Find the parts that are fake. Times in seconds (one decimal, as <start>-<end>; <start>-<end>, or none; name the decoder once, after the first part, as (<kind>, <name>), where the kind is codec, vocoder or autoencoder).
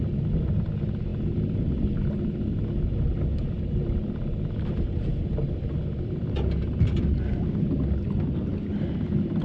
none